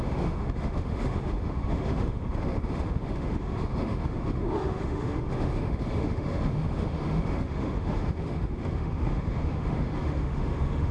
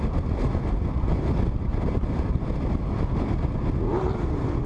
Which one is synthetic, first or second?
first